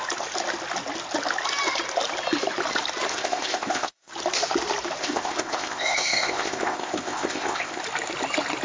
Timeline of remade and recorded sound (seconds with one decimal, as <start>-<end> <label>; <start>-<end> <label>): 0.0-3.1 recorded; 3.1-4.1 remade; 4.1-5.0 recorded; 5.0-7.8 remade; 7.8-8.6 recorded